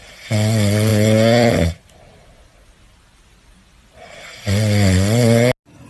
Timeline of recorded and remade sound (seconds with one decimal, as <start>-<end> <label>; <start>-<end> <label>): 0.0-5.9 recorded